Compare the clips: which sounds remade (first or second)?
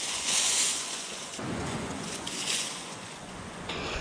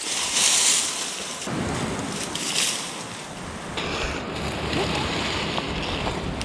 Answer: first